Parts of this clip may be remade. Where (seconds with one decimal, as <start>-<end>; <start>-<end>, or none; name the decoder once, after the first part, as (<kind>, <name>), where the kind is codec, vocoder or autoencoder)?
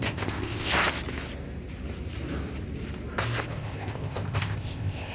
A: 0.0-0.7 (codec, ZipCodec); 3.5-5.1